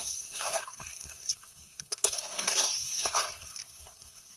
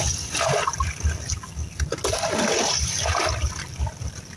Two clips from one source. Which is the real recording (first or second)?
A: second